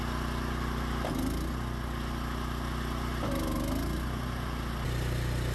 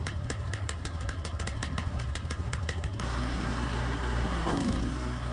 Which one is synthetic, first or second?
second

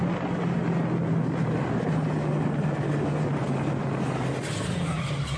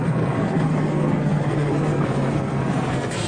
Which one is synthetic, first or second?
second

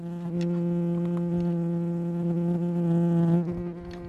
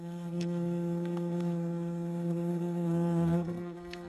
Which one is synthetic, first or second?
second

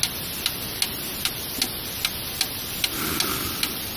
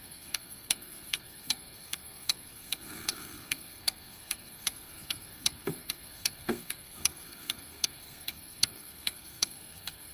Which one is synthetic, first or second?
second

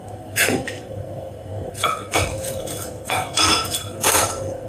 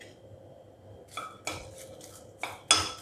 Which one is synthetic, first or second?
first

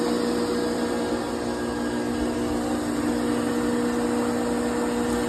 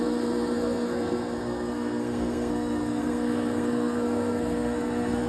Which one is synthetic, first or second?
second